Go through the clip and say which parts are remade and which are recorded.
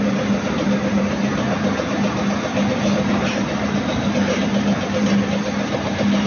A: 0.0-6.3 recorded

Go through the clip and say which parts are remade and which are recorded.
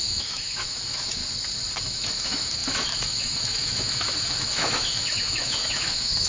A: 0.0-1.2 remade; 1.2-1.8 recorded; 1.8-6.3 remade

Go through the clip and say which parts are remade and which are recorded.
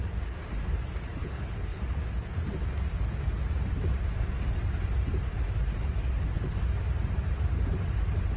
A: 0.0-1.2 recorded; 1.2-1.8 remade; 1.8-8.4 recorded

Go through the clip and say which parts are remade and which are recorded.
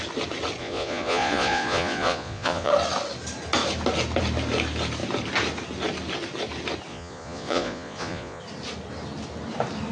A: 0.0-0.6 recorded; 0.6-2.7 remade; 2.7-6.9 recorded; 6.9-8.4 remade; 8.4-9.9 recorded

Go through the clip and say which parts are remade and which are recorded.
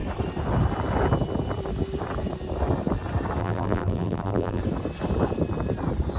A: 0.0-3.4 recorded; 3.4-4.6 remade; 4.6-6.2 recorded